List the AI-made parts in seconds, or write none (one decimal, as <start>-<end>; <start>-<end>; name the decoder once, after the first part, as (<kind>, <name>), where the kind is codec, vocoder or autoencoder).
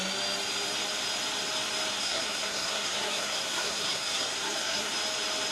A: 2.0-4.9 (codec, SNAC)